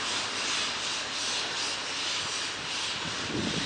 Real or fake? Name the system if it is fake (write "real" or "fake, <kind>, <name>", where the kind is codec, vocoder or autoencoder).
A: real